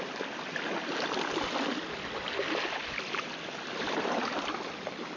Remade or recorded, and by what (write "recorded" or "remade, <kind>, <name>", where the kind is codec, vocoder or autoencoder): recorded